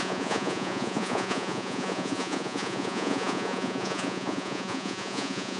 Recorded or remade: remade